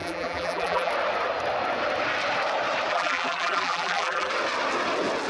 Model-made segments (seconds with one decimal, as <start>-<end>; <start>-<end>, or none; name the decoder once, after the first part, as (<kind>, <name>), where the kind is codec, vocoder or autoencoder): 0.0-0.9 (vocoder, BigVGAN v2); 2.9-4.3